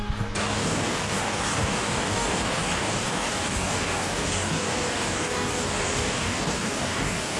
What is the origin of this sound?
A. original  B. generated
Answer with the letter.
B